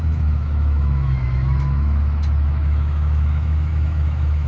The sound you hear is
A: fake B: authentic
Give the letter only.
A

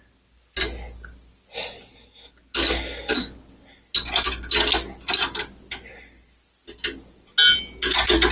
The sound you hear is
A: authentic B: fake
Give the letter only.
A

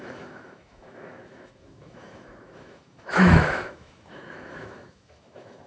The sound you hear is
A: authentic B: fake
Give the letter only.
B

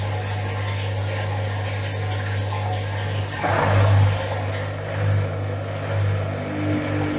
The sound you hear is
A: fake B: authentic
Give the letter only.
B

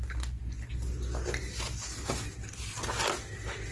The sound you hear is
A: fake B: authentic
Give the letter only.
B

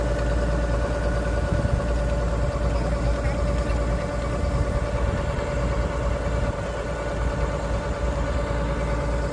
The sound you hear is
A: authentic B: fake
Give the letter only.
A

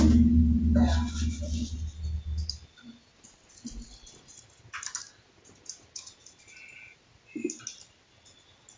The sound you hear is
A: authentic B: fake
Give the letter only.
A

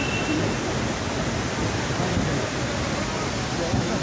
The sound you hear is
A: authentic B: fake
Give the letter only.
A